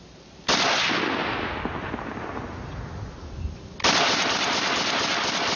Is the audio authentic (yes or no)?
yes